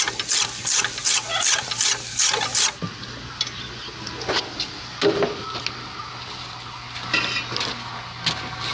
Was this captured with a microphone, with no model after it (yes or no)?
yes